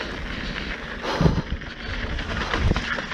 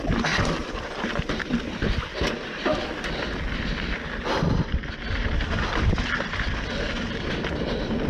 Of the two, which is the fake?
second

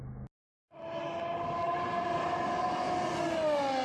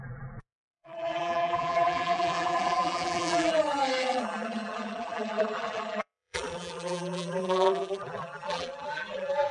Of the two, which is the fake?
second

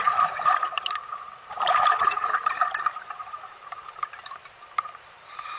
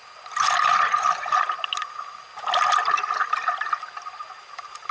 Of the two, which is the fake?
first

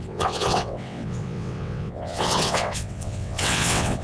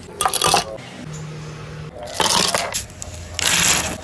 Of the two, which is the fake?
first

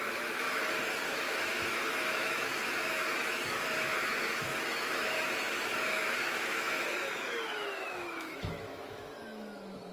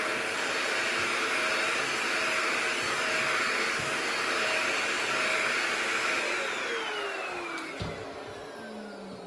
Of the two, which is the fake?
first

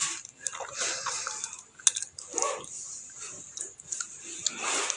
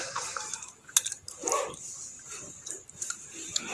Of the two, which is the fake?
second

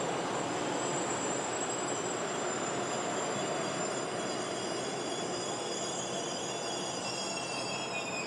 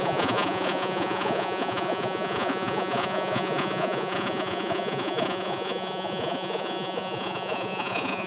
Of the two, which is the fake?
second